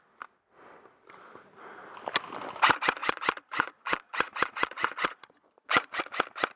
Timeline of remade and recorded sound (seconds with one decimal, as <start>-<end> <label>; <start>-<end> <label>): 0.0-3.0 recorded; 3.0-6.0 remade; 6.0-6.6 recorded